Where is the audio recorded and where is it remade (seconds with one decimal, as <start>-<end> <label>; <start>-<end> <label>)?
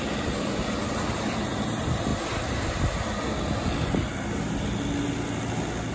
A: 0.0-2.1 remade; 2.1-5.9 recorded